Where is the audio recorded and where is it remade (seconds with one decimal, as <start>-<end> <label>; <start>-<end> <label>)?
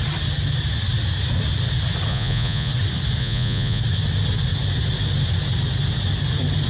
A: 0.0-2.1 recorded; 2.1-2.7 remade; 2.7-3.2 recorded; 3.2-3.8 remade; 3.8-6.7 recorded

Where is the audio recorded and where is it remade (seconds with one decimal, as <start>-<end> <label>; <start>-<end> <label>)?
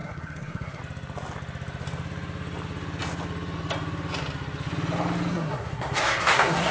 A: 0.0-0.8 remade; 0.8-5.3 recorded; 5.3-6.7 remade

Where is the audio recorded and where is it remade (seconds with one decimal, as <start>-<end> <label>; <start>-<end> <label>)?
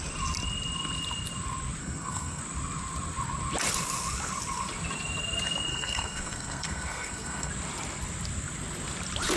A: 0.0-1.8 recorded; 1.8-2.4 remade; 2.4-5.7 recorded; 5.7-7.5 remade; 7.5-9.4 recorded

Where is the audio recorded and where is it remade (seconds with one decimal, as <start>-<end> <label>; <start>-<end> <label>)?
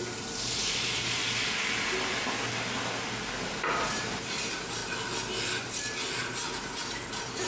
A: 0.0-1.2 remade; 1.2-3.4 recorded; 3.4-4.8 remade; 4.8-6.2 recorded; 6.2-7.5 remade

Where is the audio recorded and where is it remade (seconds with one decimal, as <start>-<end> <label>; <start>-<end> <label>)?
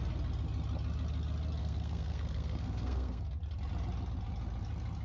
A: 0.0-1.6 recorded; 1.6-3.2 remade; 3.2-5.0 recorded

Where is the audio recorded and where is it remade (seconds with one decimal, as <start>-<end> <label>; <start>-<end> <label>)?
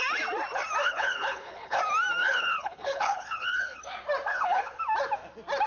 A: 0.0-0.8 recorded; 0.8-1.8 remade; 1.8-2.2 recorded; 2.2-3.8 remade; 3.8-4.3 recorded; 4.3-4.8 remade; 4.8-5.7 recorded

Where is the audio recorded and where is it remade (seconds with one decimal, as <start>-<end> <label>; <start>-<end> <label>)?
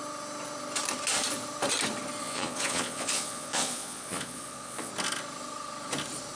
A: 0.0-2.2 recorded; 2.2-4.9 remade; 4.9-6.4 recorded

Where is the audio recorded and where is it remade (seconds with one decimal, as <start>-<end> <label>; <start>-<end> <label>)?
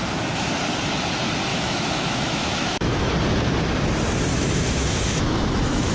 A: 0.0-0.5 remade; 0.5-1.5 recorded; 1.5-3.1 remade; 3.1-4.3 recorded; 4.3-5.9 remade